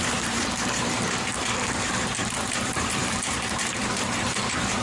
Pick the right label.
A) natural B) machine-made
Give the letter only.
B